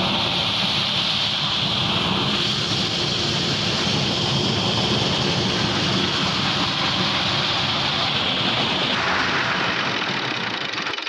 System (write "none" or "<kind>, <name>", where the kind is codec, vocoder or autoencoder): none